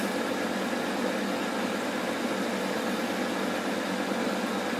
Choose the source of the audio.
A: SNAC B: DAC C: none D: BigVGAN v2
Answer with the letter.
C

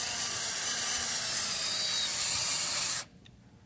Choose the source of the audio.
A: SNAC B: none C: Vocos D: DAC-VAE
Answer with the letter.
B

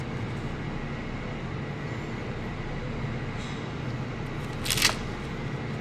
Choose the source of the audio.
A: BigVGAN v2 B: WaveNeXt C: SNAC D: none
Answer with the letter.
D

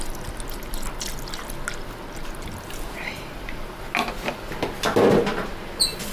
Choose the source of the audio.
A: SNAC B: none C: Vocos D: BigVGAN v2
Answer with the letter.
B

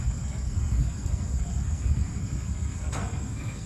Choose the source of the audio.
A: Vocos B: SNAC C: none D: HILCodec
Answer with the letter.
B